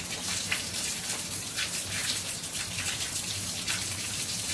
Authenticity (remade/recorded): remade